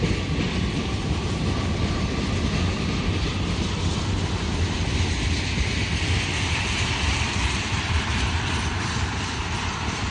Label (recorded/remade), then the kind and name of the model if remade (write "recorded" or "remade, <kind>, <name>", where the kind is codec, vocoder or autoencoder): remade, vocoder, BigVGAN v2